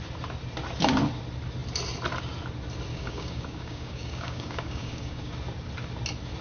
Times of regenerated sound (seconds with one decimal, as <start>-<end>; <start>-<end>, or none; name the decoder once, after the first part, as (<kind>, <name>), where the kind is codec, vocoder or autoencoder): 2.9-5.3 (codec, DAC)